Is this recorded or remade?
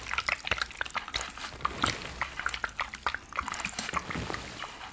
recorded